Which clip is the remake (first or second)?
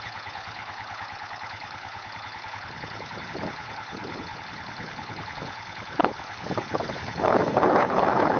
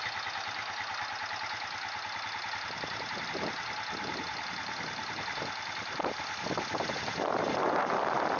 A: first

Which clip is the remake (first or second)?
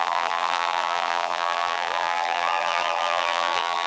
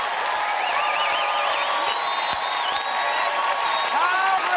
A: first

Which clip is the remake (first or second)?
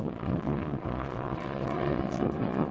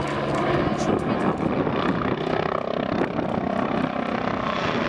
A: first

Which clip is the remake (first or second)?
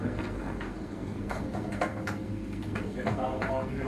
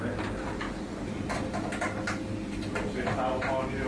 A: first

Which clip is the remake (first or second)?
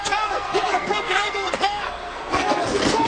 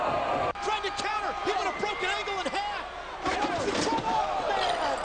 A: first